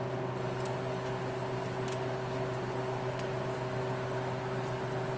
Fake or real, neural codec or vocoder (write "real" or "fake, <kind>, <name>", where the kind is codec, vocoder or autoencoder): real